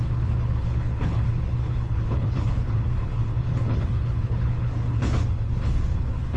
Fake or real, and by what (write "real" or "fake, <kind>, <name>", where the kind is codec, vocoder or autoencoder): fake, codec, HILCodec